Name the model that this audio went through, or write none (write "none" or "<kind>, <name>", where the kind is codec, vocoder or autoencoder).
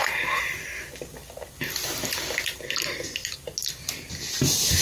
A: none